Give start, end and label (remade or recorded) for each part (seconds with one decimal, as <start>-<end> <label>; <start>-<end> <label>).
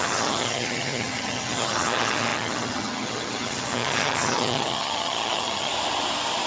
0.0-5.7 remade; 5.7-6.5 recorded